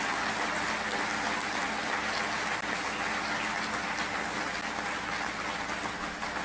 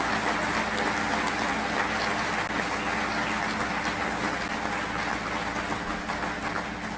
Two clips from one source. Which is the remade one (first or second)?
first